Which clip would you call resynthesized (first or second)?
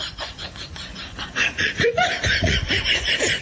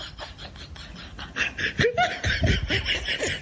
first